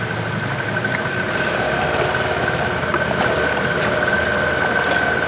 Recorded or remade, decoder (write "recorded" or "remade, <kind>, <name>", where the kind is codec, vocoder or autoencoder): recorded